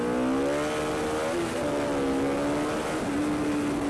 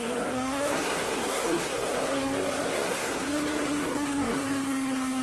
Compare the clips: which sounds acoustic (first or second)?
first